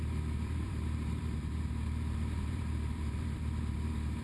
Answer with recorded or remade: remade